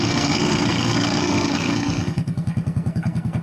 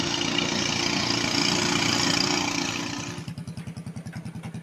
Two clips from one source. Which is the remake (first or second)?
first